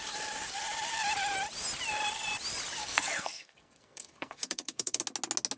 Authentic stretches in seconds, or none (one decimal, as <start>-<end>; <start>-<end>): 0.0-2.8; 5.0-5.6